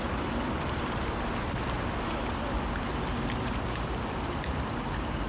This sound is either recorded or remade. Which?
remade